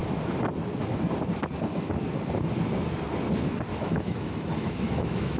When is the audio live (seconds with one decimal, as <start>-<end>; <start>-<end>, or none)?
0.0-3.7